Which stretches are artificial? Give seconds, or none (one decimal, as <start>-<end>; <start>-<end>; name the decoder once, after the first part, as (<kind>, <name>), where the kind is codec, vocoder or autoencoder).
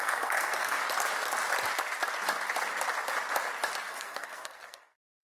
0.0-0.8 (codec, SNAC); 3.9-5.2